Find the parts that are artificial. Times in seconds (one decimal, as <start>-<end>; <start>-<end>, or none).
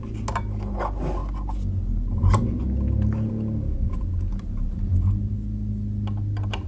none